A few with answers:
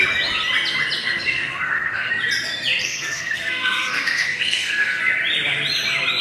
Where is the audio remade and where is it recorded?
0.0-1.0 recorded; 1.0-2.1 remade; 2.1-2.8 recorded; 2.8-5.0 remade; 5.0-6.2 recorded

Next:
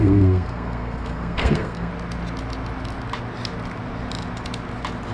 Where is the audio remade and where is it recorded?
0.0-1.9 remade; 1.9-5.1 recorded